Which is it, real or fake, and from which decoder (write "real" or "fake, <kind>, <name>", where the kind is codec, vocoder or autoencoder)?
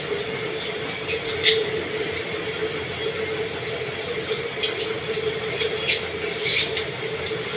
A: real